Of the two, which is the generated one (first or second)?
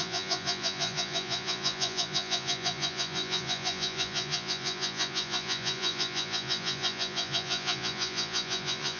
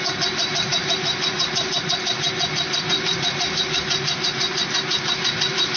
first